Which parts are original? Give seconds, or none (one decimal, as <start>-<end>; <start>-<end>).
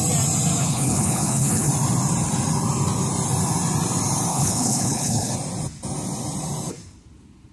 0.0-0.6; 1.7-4.3; 5.3-7.5